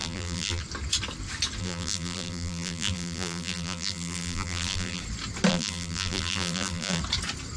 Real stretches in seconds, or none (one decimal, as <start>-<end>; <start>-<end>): 0.6-1.6; 5.0-5.5; 7.0-7.6